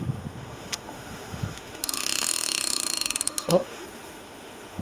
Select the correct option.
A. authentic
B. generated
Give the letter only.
B